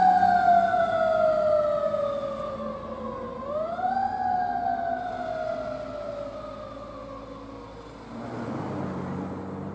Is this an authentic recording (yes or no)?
yes